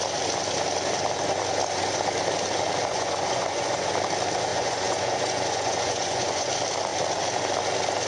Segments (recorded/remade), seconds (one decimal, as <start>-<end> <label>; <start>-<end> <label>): 0.0-2.9 recorded; 2.9-3.9 remade; 3.9-4.5 recorded; 4.5-6.5 remade; 6.5-8.1 recorded